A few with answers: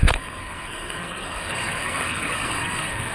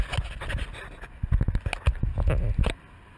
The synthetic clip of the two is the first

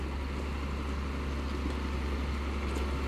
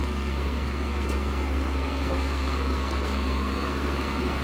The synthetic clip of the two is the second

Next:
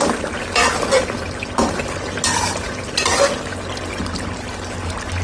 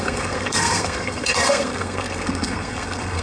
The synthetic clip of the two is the second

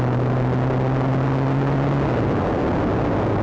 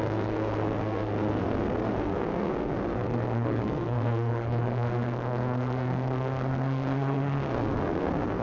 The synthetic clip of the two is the second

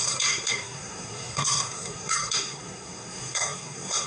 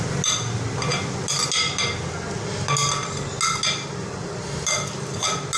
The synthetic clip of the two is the first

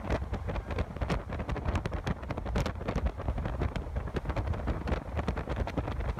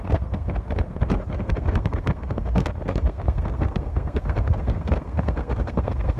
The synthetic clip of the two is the second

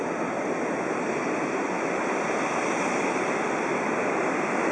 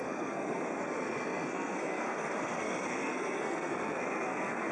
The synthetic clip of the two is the second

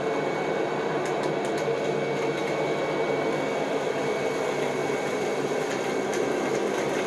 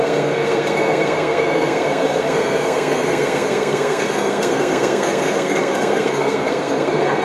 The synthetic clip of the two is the second